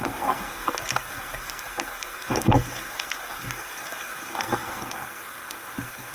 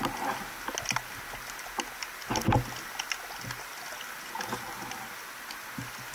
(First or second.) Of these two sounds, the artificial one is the first